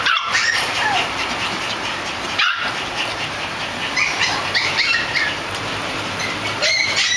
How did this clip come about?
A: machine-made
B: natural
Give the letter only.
A